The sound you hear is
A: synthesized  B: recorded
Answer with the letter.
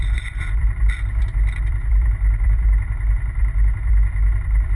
A